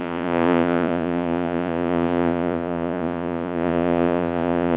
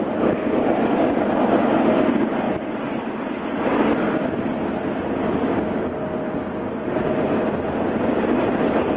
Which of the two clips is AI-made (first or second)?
first